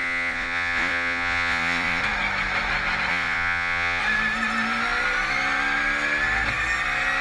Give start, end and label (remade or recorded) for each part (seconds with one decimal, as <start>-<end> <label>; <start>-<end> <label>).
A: 0.0-2.0 remade; 2.0-3.1 recorded; 3.1-4.0 remade; 4.0-7.2 recorded